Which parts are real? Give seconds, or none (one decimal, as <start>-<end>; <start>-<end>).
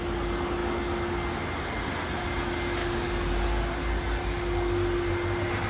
0.0-5.7